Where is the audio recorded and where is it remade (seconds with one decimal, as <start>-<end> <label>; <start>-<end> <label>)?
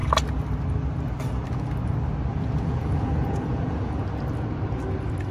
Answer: 0.0-2.3 recorded; 2.3-4.0 remade; 4.0-5.3 recorded